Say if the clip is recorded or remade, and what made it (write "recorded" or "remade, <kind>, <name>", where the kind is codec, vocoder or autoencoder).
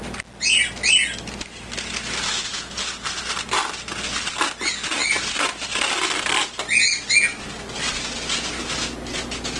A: recorded